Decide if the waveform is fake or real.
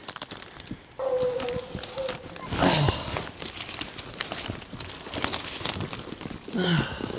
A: real